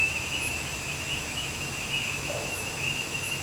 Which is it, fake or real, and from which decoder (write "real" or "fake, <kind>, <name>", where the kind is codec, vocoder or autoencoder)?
fake, autoencoder, DAC-VAE